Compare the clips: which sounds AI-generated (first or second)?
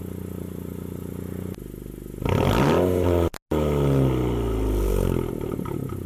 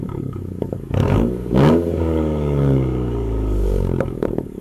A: second